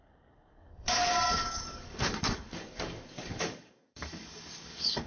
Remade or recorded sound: remade